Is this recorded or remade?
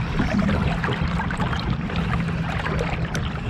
recorded